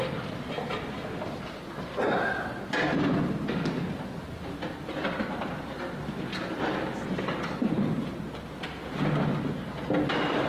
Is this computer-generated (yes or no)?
no